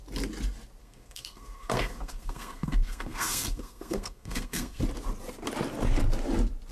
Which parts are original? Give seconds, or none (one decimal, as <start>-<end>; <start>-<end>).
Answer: 0.0-0.8; 4.8-6.7